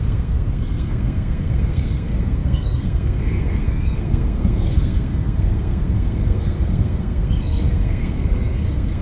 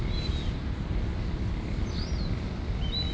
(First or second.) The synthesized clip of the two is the first